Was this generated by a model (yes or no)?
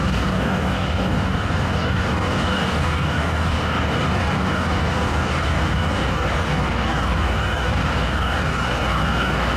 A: yes